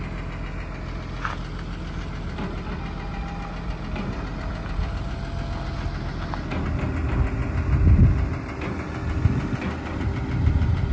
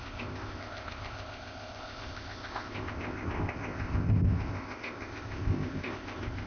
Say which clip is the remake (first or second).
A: second